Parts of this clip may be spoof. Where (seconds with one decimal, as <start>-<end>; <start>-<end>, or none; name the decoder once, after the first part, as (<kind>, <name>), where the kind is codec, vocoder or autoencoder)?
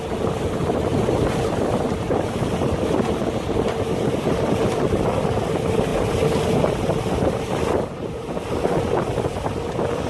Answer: 0.9-3.1 (vocoder, BigVGAN v2)